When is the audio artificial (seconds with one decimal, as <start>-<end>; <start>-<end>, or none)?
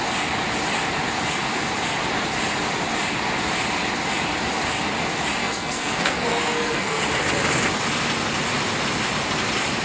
5.4-7.0